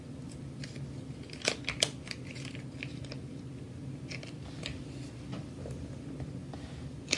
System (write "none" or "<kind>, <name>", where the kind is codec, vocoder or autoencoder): none